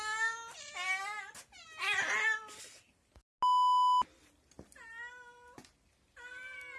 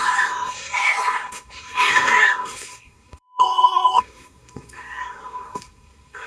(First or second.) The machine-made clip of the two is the second